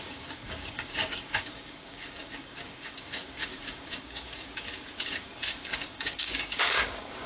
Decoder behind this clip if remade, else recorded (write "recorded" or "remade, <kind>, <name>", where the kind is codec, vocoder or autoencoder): remade, codec, DAC